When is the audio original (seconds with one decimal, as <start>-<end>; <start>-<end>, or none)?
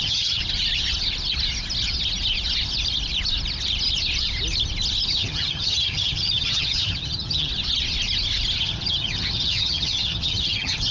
0.4-5.1; 7.5-8.6